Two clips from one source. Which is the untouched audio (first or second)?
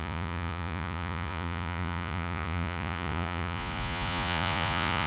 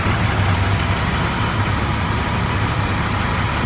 second